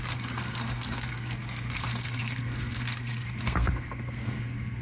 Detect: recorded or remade remade